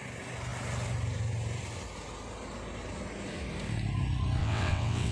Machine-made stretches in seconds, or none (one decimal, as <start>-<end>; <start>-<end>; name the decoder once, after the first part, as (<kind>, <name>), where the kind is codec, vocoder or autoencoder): 4.4-5.1 (vocoder, WaveNeXt)